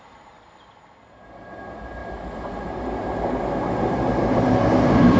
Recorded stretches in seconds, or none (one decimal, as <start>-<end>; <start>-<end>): 0.0-5.2